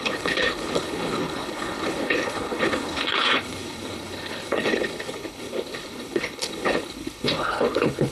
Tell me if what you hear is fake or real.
fake